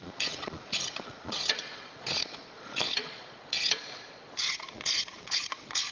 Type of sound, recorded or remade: remade